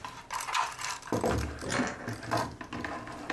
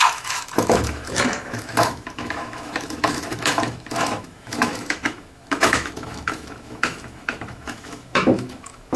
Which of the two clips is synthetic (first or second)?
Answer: second